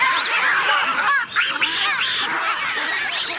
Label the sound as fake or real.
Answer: real